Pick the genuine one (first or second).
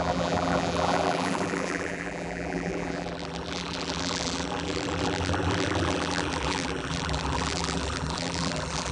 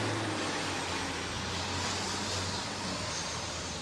second